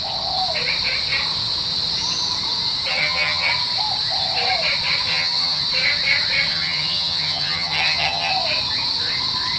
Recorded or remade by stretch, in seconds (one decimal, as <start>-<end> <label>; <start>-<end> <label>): 0.0-2.9 recorded; 2.9-3.5 remade; 3.5-5.1 recorded; 5.1-5.6 remade; 5.6-6.5 recorded; 6.5-8.3 remade; 8.3-9.6 recorded